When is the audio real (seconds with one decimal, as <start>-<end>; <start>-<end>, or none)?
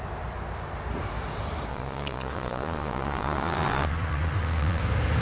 0.0-1.7; 4.8-5.2